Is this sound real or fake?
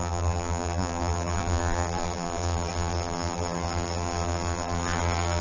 fake